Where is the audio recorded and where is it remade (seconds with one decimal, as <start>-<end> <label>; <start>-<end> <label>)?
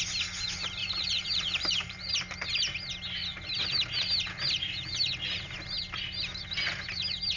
0.0-0.8 recorded; 0.8-2.1 remade; 2.1-7.4 recorded